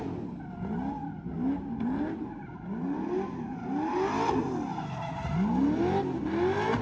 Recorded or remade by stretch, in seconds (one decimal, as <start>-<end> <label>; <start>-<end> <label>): 0.0-6.8 recorded